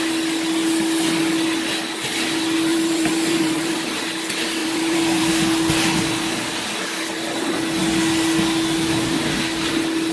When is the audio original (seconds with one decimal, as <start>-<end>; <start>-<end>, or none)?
0.0-2.7; 4.0-4.6; 5.3-10.1